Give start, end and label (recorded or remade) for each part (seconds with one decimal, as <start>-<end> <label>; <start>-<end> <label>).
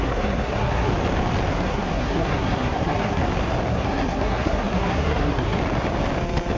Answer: 0.0-0.9 remade; 0.9-1.5 recorded; 1.5-3.2 remade; 3.2-3.7 recorded; 3.7-5.6 remade; 5.6-6.6 recorded